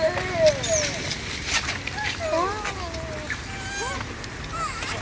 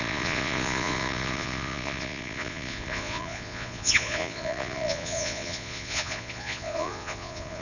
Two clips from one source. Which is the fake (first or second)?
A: second